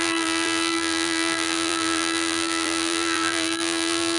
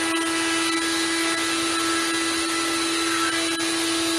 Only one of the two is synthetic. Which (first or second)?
first